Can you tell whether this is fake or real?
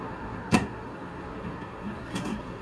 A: fake